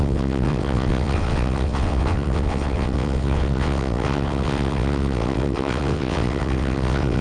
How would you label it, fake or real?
fake